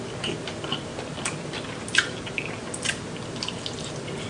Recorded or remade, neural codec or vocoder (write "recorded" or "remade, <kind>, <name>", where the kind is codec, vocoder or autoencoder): recorded